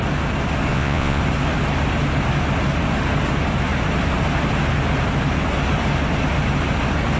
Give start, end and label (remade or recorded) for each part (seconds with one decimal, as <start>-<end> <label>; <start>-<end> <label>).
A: 0.0-0.7 recorded; 0.7-1.2 remade; 1.2-7.2 recorded